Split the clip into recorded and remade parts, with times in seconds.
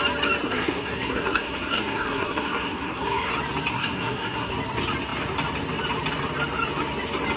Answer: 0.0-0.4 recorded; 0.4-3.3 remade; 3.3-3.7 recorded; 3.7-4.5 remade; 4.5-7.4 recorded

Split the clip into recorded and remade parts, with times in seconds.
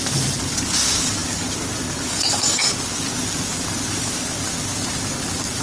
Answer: 0.0-2.1 recorded; 2.1-2.7 remade; 2.7-5.6 recorded